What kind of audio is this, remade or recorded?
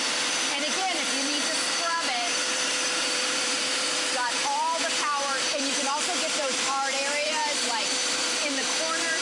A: remade